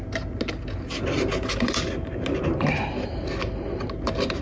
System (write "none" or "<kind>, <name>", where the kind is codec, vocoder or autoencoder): none